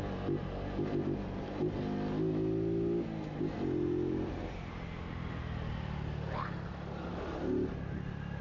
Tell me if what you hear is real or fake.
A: real